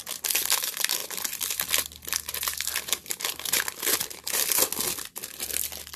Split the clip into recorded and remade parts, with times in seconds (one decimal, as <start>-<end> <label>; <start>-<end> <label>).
0.0-6.0 recorded